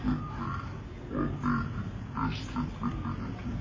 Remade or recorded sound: recorded